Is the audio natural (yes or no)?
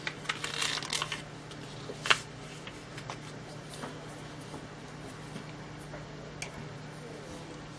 yes